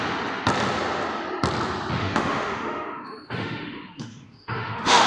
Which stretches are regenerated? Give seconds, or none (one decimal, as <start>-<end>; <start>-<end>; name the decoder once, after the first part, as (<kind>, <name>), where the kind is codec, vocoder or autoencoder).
2.0-5.1 (autoencoder, DAC-VAE)